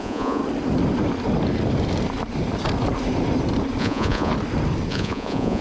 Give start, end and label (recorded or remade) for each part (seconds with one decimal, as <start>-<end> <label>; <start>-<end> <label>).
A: 0.0-0.4 remade; 0.4-3.8 recorded; 3.8-4.3 remade; 4.3-4.9 recorded; 4.9-5.6 remade